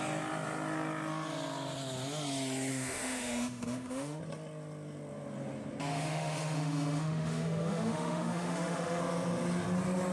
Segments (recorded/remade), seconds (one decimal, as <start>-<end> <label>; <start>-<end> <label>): 0.0-2.7 recorded; 2.7-4.2 remade; 4.2-5.9 recorded; 5.9-9.0 remade; 9.0-10.1 recorded